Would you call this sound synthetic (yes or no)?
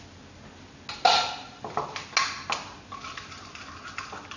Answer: no